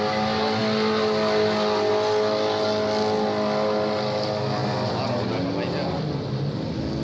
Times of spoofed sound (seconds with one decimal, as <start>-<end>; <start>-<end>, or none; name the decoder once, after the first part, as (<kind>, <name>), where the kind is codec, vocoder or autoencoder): none